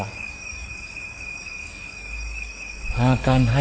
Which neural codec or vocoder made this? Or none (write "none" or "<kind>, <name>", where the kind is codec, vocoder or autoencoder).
codec, DAC